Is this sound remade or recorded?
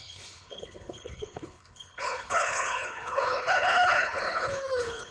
remade